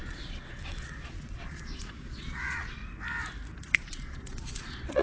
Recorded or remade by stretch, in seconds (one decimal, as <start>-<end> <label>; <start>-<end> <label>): 0.0-2.8 remade; 2.8-3.6 recorded; 3.6-5.0 remade